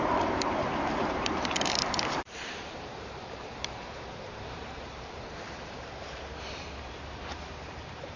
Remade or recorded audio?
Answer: remade